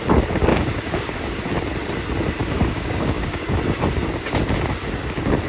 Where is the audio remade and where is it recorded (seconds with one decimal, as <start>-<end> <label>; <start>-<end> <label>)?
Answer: 0.0-0.5 recorded; 0.5-1.2 remade; 1.2-2.4 recorded; 2.4-3.6 remade; 3.6-5.5 recorded